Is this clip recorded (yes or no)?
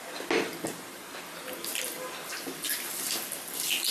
yes